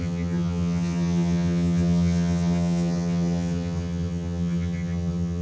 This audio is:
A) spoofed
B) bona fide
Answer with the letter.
A